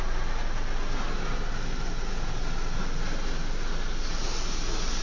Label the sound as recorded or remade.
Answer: recorded